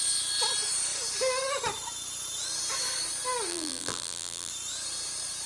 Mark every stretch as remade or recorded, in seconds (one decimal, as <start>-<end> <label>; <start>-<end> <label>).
0.0-3.5 recorded; 3.5-4.5 remade; 4.5-5.5 recorded